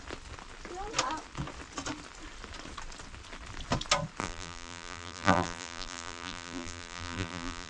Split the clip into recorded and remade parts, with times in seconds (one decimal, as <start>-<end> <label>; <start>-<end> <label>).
0.0-4.2 recorded; 4.2-7.7 remade